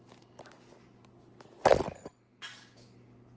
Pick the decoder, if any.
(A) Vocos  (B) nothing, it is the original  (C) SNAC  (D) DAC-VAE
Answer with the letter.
B